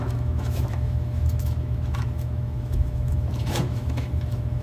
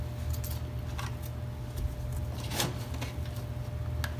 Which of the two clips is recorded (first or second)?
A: second